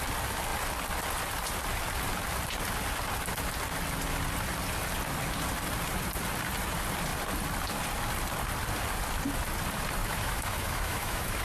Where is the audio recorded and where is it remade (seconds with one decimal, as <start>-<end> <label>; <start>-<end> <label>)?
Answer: 0.0-10.0 recorded; 10.0-11.4 remade